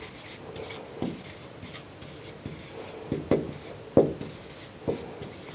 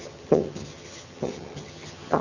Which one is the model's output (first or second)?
second